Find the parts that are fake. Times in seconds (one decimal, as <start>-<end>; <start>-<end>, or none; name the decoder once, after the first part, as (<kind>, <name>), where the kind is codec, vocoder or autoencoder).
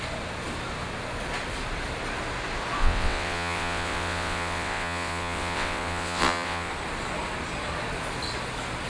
2.8-6.7 (vocoder, WaveNeXt)